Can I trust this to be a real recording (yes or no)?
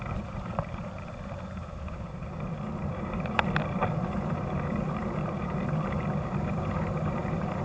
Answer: no